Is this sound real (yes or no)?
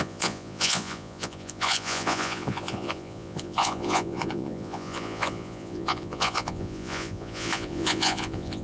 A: no